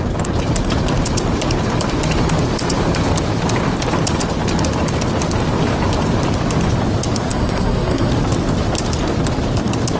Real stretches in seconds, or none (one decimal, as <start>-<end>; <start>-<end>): 0.0-7.3; 8.1-10.0